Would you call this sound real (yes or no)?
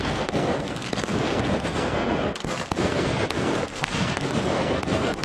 no